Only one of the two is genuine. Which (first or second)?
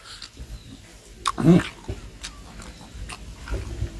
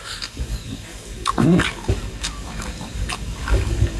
first